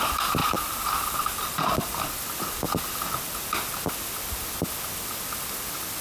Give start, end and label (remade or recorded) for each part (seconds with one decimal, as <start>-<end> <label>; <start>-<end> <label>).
0.0-0.4 recorded; 0.4-2.1 remade; 2.1-6.0 recorded